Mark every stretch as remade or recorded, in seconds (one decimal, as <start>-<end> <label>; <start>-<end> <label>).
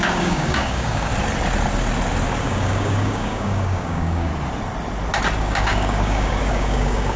0.0-1.1 remade; 1.1-2.4 recorded; 2.4-4.3 remade; 4.3-5.4 recorded; 5.4-7.2 remade